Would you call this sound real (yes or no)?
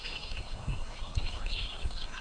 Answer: no